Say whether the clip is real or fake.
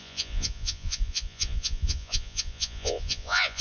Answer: fake